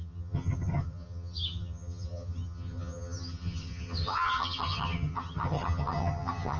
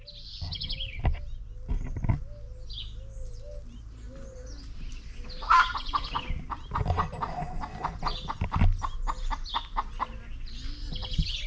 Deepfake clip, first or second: first